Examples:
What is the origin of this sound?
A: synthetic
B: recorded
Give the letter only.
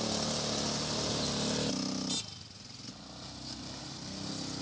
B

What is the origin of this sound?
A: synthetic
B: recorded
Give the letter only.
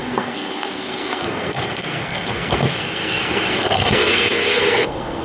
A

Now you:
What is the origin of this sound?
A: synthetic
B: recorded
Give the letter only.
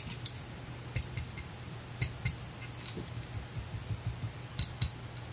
B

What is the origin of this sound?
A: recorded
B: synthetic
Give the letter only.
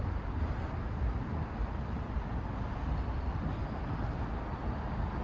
A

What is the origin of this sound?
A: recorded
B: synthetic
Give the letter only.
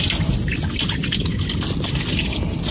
A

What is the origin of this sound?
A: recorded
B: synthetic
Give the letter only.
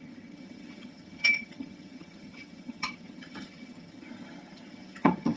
B